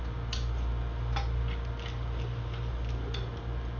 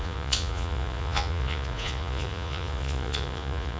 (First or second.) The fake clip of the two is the second